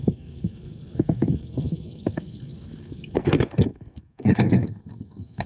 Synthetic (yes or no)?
yes